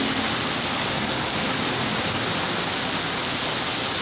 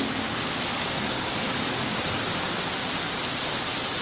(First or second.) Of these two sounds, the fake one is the second